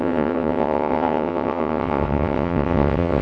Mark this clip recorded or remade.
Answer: remade